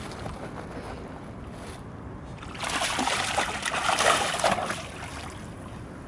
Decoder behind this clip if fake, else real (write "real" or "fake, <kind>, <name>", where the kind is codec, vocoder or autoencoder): real